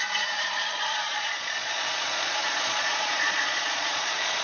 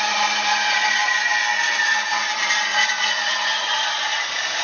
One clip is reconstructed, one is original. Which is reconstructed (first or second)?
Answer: first